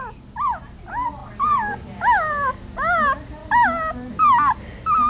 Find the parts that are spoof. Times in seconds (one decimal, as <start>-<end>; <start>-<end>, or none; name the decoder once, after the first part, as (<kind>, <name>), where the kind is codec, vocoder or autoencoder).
none